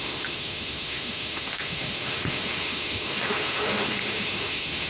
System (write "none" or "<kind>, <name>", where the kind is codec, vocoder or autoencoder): autoencoder, DAC-VAE